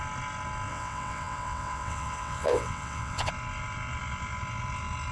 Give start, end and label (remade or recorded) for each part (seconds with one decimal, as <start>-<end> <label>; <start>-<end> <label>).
0.0-0.7 recorded; 0.7-3.3 remade; 3.3-5.1 recorded